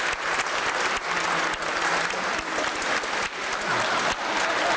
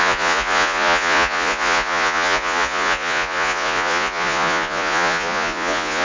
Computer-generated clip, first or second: second